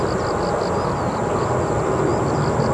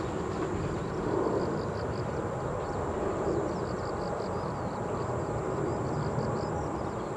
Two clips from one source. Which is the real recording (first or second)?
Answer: first